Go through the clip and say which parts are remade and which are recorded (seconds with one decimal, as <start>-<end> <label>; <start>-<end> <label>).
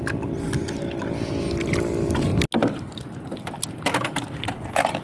0.0-5.0 recorded